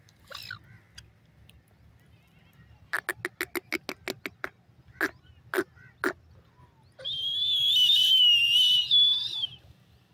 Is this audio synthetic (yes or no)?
no